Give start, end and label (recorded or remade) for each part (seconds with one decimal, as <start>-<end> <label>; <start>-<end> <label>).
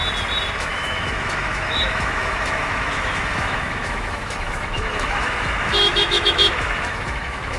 0.0-0.6 recorded; 0.6-7.6 remade